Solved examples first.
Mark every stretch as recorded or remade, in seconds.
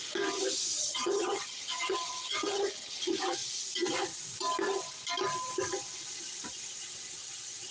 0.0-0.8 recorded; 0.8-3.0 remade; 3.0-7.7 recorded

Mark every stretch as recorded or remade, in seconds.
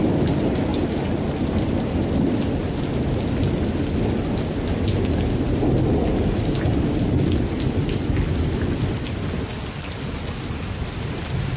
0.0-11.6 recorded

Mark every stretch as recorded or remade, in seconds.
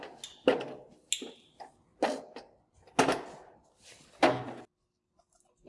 0.0-5.7 recorded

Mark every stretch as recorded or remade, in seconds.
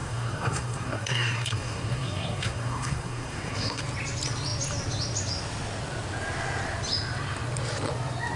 0.0-3.8 remade; 3.8-8.4 recorded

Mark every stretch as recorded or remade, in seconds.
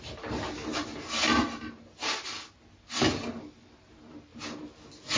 0.0-5.2 recorded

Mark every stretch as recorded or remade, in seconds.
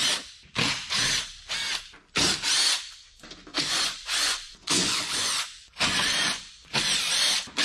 0.0-3.5 recorded; 3.5-6.8 remade; 6.8-7.6 recorded